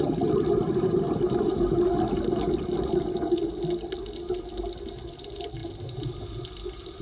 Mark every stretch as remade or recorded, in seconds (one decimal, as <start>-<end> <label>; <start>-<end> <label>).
0.0-7.0 recorded